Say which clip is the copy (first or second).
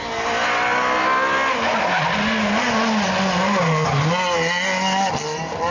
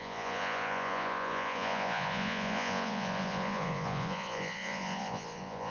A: second